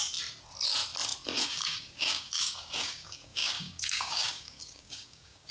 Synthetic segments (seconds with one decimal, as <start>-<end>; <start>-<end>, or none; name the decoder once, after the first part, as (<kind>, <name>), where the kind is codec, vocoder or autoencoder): 1.4-5.5 (codec, DAC)